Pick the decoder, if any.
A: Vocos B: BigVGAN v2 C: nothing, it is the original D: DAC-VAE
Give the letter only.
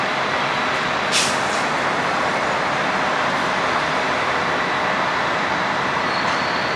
C